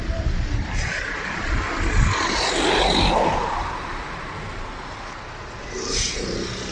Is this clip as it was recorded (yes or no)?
yes